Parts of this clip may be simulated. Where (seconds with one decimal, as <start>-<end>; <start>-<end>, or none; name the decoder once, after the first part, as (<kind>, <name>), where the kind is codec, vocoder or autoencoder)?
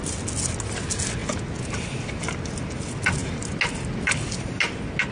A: none